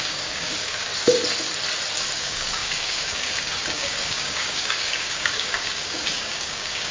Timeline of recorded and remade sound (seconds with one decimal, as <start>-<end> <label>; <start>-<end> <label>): 0.0-0.9 remade; 0.9-2.2 recorded; 2.2-6.9 remade